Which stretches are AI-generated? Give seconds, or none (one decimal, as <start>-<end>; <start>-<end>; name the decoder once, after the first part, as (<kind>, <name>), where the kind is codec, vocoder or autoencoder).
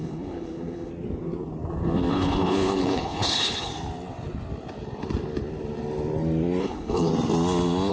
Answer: 0.0-0.9 (codec, HILCodec); 2.1-3.7; 6.6-7.1